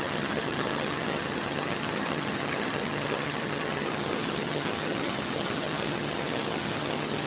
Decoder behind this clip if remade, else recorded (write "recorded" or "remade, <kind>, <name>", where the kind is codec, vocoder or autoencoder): remade, vocoder, HiFi-GAN